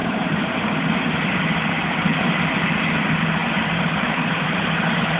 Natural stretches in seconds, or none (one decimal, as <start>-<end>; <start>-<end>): 1.4-3.4